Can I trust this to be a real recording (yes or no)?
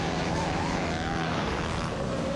no